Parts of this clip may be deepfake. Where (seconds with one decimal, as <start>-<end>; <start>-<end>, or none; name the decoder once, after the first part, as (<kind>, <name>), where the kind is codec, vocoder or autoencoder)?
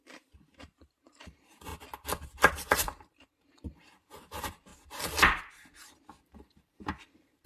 0.0-1.7 (vocoder, BigVGAN v2); 2.5-4.7; 6.2-7.5